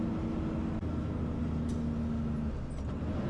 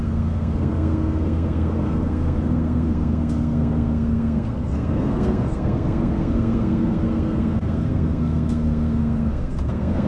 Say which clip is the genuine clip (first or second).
first